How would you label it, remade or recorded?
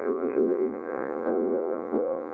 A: remade